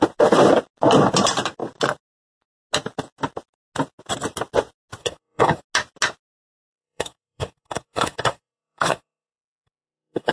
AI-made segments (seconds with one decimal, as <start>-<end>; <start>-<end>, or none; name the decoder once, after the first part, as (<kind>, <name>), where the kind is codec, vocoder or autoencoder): 5.0-5.6 (codec, SNAC); 6.7-10.3